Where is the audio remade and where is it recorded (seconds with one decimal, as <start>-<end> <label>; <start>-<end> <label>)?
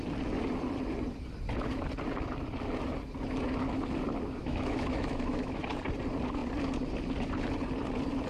0.0-4.4 recorded; 4.4-5.6 remade; 5.6-8.3 recorded